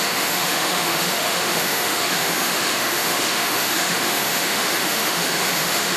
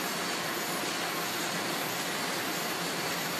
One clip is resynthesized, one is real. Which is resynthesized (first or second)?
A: first